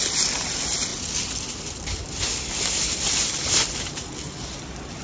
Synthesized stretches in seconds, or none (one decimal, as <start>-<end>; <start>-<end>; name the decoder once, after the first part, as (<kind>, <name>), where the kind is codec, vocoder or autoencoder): none